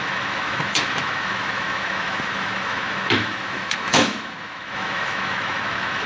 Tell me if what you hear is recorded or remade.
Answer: remade